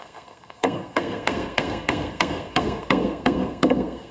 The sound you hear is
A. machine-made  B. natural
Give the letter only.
A